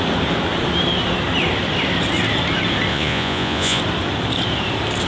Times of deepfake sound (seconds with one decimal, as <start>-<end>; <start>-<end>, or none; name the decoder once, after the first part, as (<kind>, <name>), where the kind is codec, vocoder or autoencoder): 2.9-3.8 (vocoder, Vocos)